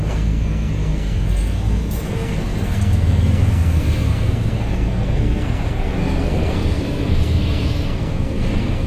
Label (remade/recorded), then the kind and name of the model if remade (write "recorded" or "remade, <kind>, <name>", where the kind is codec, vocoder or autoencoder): remade, codec, SNAC